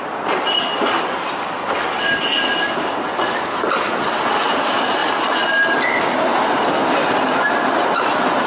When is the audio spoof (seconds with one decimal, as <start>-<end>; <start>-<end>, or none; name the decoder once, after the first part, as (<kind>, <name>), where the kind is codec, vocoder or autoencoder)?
none